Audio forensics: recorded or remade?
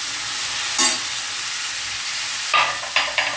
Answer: recorded